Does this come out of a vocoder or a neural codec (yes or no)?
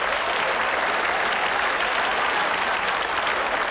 no